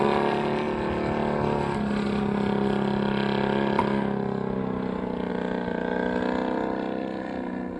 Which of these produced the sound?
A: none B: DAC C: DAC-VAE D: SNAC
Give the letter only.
A